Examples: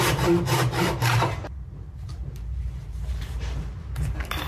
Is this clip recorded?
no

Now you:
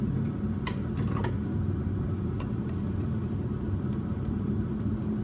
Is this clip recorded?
no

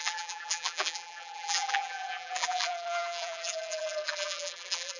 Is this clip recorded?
no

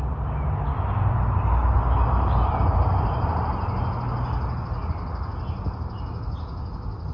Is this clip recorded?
yes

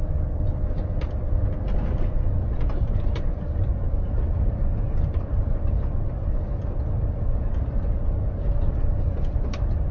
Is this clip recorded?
no